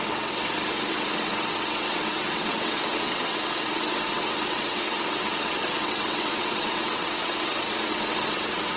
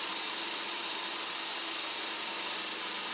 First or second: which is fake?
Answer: first